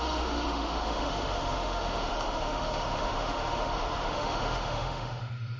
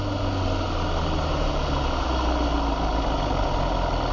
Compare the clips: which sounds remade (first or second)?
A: first